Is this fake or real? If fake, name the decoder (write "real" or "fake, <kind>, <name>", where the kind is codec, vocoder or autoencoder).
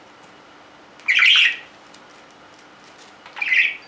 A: real